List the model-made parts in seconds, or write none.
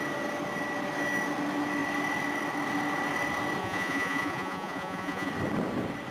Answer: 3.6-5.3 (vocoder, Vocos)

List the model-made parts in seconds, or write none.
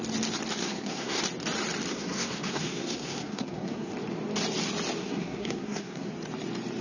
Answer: 0.6-1.2 (codec, SNAC); 1.9-3.9; 5.0-6.1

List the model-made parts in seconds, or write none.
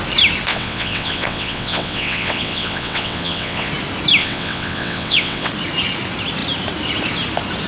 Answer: 0.5-3.7 (vocoder, WaveNeXt); 4.2-5.5